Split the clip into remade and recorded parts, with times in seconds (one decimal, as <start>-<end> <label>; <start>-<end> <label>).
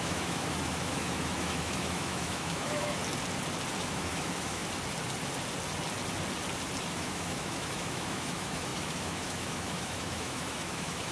0.0-3.0 remade; 3.0-3.8 recorded; 3.8-4.6 remade; 4.6-6.8 recorded; 6.8-11.1 remade